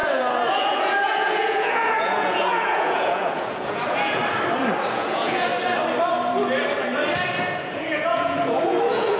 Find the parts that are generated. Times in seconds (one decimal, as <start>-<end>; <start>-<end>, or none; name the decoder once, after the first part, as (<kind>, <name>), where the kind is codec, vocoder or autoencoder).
0.0-4.2 (vocoder, Vocos); 4.9-5.5; 7.6-9.2